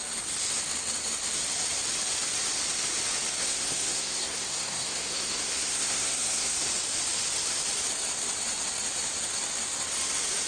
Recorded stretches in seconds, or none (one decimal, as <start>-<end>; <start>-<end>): 0.0-3.4; 6.7-10.5